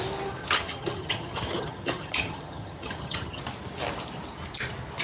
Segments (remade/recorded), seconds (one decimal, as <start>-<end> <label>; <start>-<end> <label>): 0.0-0.4 recorded; 0.4-3.4 remade; 3.4-5.0 recorded